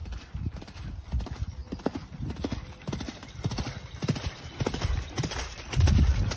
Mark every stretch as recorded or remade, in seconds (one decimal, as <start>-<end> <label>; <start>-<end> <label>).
0.0-0.6 recorded; 0.6-1.6 remade; 1.6-5.4 recorded; 5.4-6.4 remade